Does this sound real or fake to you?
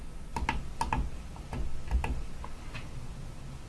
real